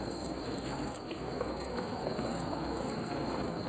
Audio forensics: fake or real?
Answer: fake